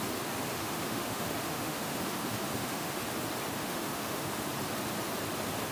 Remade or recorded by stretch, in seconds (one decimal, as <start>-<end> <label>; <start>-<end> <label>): 0.0-0.5 recorded; 0.5-3.0 remade; 3.0-3.6 recorded; 3.6-4.5 remade; 4.5-5.7 recorded